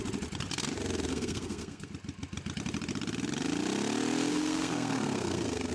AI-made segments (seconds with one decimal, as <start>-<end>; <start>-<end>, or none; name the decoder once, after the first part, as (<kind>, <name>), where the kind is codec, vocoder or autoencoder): 1.1-1.9 (codec, SNAC); 4.3-5.7